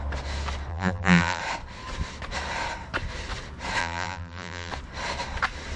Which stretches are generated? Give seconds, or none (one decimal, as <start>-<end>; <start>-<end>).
0.7-1.4; 3.8-4.7